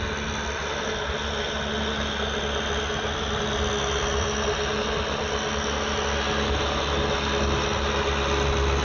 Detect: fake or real real